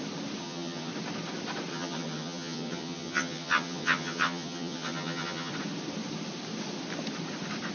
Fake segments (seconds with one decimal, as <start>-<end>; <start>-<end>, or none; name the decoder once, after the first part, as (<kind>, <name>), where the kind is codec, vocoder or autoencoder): 0.4-0.9 (vocoder, HiFi-GAN); 1.7-5.5